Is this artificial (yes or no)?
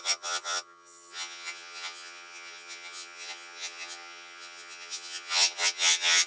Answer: yes